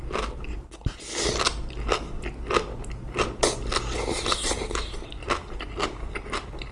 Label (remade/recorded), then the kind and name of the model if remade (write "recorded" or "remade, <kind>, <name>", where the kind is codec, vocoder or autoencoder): recorded